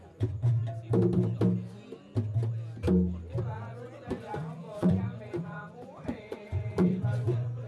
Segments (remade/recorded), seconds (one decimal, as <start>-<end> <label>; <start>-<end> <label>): 0.0-0.6 remade; 0.6-3.4 recorded; 3.4-7.7 remade